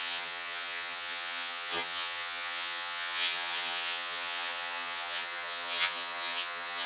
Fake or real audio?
fake